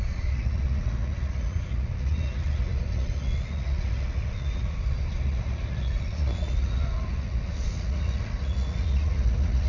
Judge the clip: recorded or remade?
remade